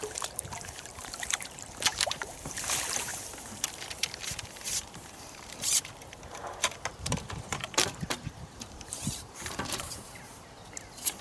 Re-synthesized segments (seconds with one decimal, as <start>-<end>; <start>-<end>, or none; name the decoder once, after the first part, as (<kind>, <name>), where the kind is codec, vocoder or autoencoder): 0.0-3.1 (vocoder, BigVGAN v2); 3.9-11.2